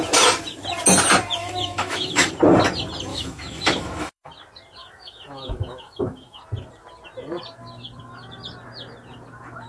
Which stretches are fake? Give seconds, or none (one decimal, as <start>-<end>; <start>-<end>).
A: 1.4-2.3; 3.1-4.3; 4.8-6.4